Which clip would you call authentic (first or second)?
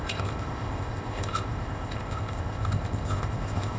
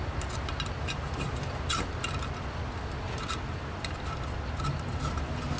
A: second